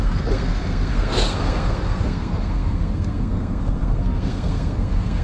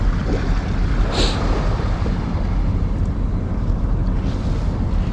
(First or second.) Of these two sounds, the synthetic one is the first